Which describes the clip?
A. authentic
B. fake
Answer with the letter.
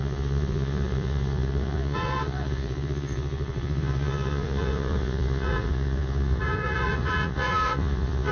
B